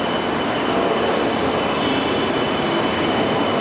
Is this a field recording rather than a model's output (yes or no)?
yes